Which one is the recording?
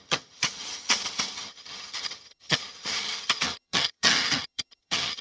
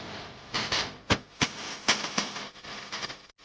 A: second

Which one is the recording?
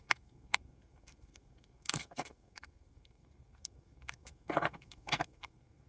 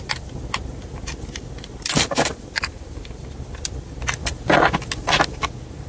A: second